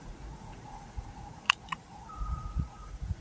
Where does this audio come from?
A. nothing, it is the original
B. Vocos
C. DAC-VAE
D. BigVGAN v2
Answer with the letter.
B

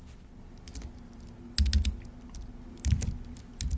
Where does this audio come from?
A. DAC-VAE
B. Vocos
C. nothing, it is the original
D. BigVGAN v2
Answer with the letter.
C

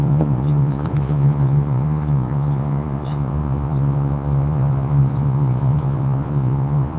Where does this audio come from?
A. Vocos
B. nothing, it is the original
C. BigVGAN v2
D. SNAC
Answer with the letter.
A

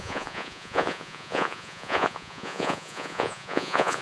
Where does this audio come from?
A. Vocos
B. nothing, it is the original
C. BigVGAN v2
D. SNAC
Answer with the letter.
A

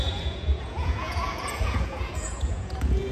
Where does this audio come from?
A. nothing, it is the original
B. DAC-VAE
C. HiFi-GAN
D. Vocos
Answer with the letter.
D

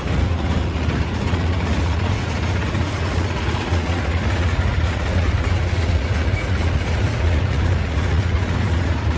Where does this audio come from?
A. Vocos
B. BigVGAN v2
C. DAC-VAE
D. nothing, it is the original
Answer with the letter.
A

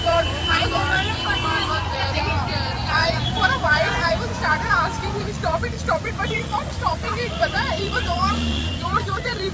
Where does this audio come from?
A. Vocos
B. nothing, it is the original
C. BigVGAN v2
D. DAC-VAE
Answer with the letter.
A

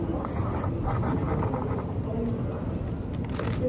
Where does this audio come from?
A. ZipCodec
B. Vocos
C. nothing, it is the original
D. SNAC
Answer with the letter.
C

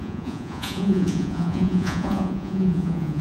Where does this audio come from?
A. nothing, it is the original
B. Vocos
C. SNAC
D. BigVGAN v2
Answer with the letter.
B